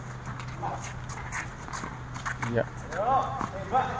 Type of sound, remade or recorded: recorded